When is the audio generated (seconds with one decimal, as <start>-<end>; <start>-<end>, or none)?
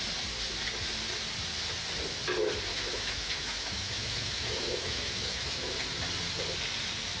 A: 2.7-5.7